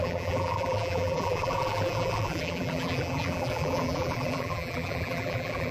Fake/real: fake